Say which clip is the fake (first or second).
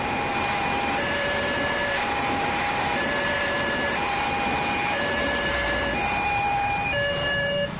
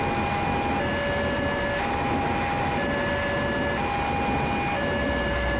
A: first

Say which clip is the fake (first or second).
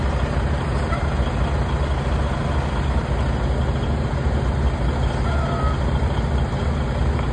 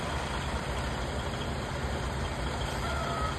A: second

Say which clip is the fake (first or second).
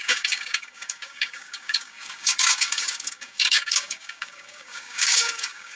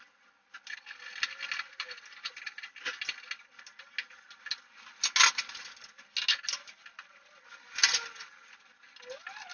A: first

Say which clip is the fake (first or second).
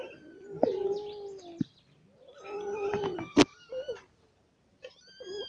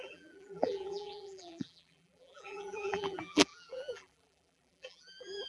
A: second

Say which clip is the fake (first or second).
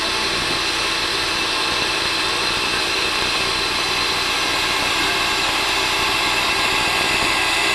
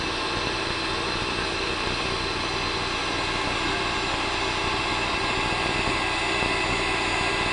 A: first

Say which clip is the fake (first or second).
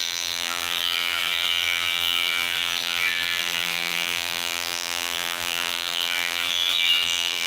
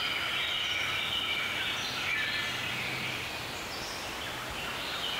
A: first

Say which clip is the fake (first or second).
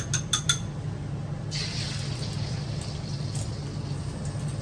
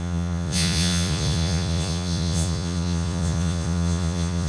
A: second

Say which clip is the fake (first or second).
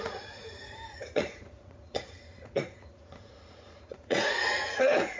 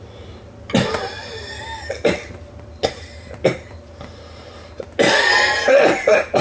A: first